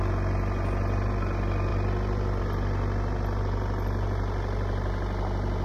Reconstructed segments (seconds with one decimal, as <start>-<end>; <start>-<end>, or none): none